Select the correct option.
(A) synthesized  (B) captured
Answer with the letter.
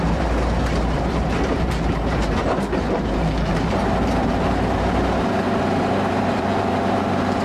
A